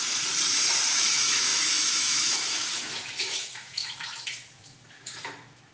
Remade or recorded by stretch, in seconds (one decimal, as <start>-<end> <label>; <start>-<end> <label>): 0.0-0.9 recorded; 0.9-5.7 remade